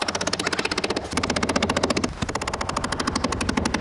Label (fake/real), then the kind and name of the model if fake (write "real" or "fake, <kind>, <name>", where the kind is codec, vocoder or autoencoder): real